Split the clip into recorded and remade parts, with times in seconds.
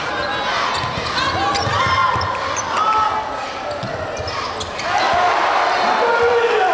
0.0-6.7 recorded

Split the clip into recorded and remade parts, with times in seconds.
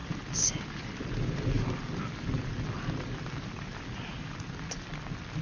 0.0-5.4 recorded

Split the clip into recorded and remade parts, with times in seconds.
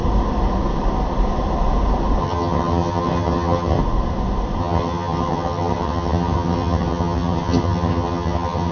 0.0-2.2 recorded; 2.2-3.8 remade; 3.8-4.6 recorded; 4.6-8.7 remade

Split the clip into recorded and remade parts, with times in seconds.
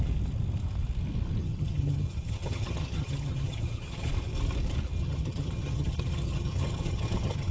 0.0-1.4 recorded; 1.4-4.1 remade; 4.1-5.0 recorded; 5.0-7.5 remade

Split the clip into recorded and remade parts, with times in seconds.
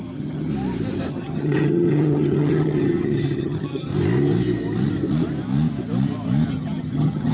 0.0-0.5 remade; 0.5-1.1 recorded; 1.1-3.9 remade; 3.9-6.5 recorded; 6.5-7.3 remade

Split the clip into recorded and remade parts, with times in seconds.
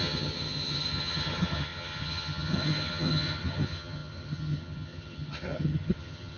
0.0-6.4 remade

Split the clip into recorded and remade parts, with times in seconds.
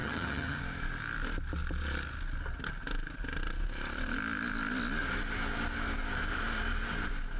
0.0-0.6 remade; 0.6-7.4 recorded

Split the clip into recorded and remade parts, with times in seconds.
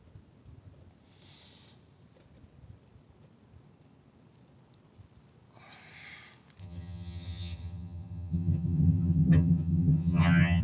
0.0-6.6 recorded; 6.6-10.6 remade